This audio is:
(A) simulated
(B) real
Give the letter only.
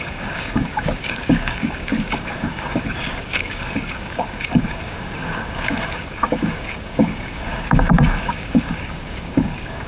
A